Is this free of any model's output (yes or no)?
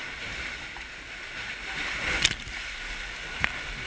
yes